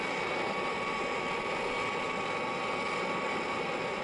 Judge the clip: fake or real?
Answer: real